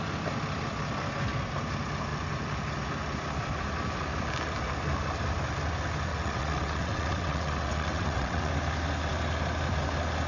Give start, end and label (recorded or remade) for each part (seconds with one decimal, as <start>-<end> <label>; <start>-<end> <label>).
0.0-6.1 recorded; 6.1-8.5 remade; 8.5-10.3 recorded